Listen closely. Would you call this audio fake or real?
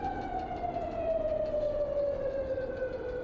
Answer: real